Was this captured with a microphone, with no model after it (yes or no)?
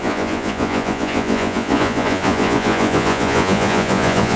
no